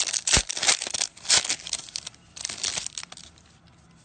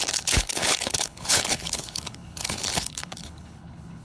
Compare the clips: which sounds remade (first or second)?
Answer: second